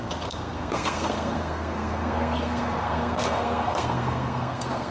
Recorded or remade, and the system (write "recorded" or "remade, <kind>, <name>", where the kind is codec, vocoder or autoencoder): remade, codec, SNAC